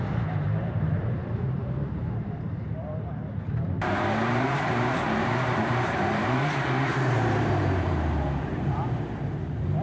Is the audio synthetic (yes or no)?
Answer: yes